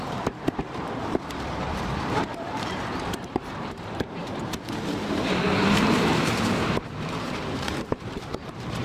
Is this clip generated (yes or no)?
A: yes